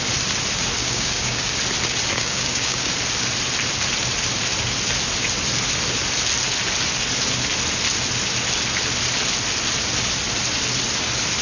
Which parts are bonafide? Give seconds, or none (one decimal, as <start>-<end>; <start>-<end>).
0.0-0.8; 1.5-2.1; 2.9-11.4